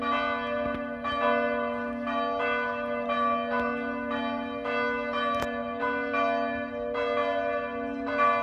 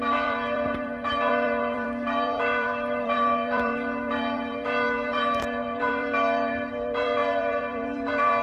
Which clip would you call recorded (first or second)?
first